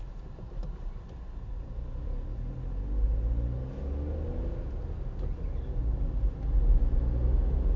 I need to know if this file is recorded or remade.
recorded